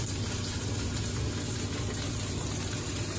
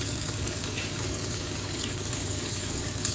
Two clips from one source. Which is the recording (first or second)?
first